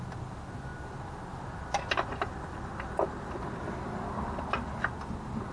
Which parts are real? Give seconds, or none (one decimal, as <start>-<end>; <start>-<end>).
0.0-5.5

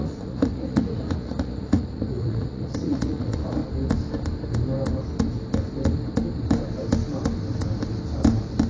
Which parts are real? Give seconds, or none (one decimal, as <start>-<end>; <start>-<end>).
3.6-8.7

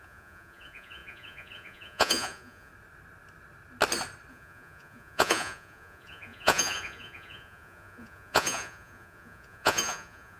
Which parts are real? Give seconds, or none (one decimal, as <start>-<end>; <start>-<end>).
2.7-4.3

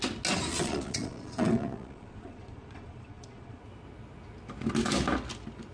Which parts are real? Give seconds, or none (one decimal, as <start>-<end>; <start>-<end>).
0.0-0.5; 3.6-5.7

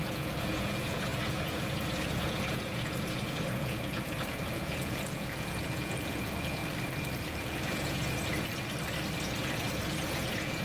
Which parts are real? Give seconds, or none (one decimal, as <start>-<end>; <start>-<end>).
6.6-7.2; 8.5-9.2